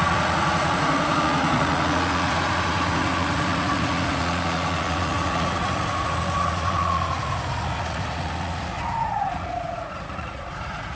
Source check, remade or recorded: remade